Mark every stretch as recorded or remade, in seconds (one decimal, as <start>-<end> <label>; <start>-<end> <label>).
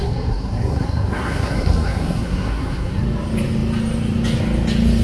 0.0-3.0 remade; 3.0-5.0 recorded